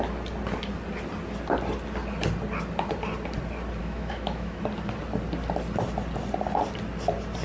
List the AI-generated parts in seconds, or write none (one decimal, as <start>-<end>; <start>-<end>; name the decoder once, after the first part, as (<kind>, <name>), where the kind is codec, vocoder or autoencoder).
3.8-4.6 (autoencoder, DAC-VAE)